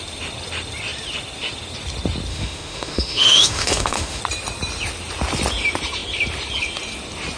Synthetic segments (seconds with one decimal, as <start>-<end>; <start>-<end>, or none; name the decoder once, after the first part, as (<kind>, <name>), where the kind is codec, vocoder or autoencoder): 2.3-4.2 (autoencoder, DAC-VAE)